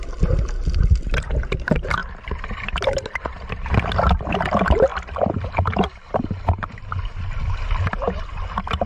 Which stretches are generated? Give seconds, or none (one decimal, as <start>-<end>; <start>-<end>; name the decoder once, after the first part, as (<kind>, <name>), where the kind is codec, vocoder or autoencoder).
2.0-4.3 (vocoder, BigVGAN v2)